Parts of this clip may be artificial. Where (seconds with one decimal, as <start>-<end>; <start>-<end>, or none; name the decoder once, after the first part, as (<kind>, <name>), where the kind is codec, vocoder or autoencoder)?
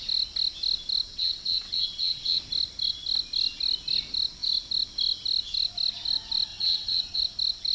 1.1-2.4 (vocoder, WaveNeXt); 6.5-7.2